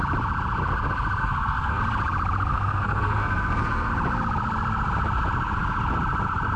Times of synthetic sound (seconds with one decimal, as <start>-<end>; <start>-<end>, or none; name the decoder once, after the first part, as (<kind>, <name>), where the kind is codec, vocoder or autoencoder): 1.2-1.8 (codec, SNAC); 2.5-3.9